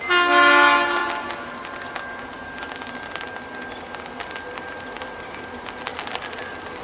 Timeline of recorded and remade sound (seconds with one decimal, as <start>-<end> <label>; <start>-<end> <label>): 0.0-6.8 recorded